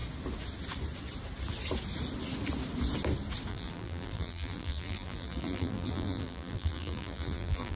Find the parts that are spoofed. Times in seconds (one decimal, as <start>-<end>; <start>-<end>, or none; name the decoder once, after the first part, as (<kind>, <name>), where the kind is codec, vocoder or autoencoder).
3.5-7.8 (vocoder, BigVGAN v2)